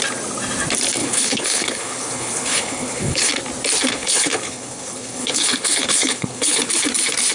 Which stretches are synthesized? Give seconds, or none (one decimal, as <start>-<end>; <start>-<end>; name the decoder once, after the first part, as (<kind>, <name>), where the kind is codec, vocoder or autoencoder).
1.0-3.3 (codec, HILCodec); 3.9-6.6